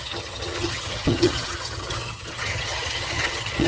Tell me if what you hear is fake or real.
fake